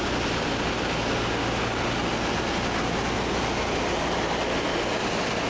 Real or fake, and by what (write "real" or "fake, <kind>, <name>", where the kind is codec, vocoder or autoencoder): real